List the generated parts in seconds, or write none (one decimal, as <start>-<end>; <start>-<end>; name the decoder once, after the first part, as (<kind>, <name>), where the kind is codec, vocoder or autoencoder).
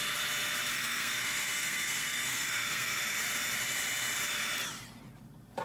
0.7-3.0 (codec, SNAC)